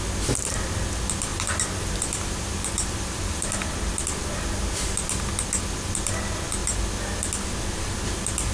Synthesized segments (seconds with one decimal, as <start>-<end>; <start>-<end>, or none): 1.3-3.4